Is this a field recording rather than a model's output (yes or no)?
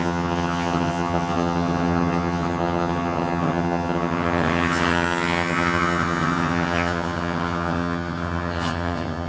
no